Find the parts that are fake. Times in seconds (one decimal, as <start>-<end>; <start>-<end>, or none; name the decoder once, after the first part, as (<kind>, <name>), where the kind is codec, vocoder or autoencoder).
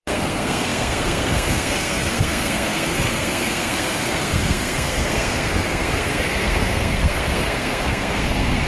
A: 0.0-8.7 (codec, SNAC)